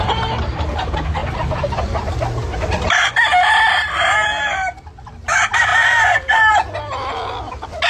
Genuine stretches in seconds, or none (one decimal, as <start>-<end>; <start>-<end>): 0.0-1.2; 2.0-2.4; 3.3-7.9